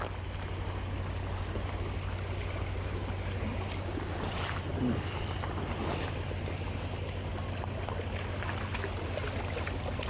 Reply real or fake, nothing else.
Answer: real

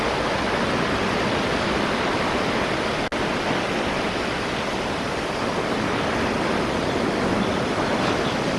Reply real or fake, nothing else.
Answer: real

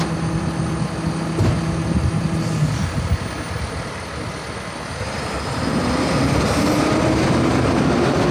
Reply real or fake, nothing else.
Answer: real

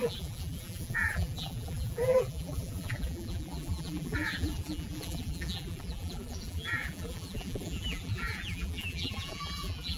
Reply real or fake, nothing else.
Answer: fake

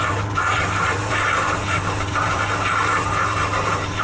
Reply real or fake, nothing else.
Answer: fake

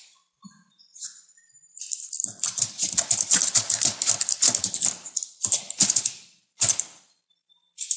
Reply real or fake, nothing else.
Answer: fake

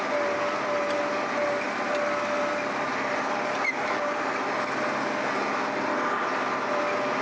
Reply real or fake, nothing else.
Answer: real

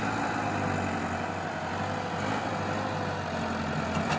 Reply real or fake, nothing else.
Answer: real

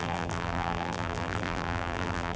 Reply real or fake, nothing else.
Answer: fake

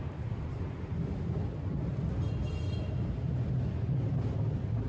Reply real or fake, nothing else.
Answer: real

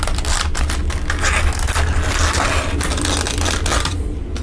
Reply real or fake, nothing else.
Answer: real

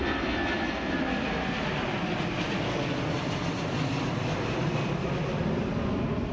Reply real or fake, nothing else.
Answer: real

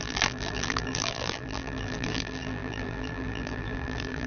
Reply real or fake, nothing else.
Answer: fake